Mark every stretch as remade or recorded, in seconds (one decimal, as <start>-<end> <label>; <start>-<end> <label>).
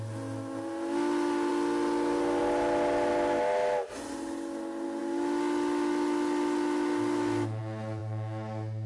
0.0-8.9 recorded